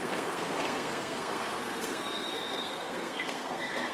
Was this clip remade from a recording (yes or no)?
yes